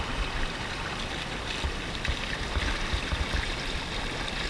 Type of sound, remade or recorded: recorded